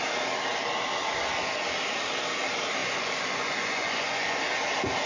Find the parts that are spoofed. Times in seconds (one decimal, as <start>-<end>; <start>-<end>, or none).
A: 2.8-4.4